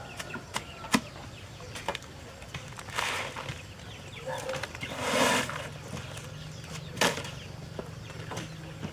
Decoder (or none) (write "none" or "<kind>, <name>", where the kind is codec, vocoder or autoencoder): none